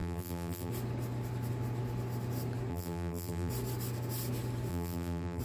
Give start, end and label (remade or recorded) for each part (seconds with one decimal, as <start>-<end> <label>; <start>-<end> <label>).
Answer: 0.0-0.7 remade; 0.7-2.7 recorded; 2.7-3.5 remade; 3.5-4.7 recorded; 4.7-5.4 remade